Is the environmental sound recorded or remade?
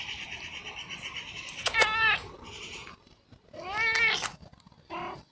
recorded